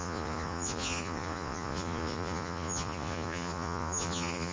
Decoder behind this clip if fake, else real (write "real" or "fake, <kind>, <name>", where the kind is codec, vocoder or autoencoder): fake, vocoder, Vocos